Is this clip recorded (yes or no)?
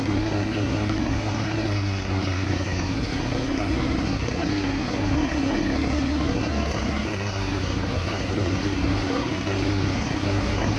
no